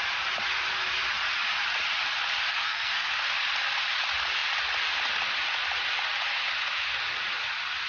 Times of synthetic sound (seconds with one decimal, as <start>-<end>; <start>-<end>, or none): 2.5-3.1